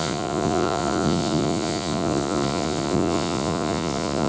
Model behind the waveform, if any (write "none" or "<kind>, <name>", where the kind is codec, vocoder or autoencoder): vocoder, Vocos